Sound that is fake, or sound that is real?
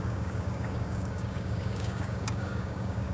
fake